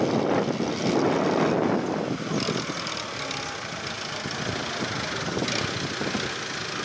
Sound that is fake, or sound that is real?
real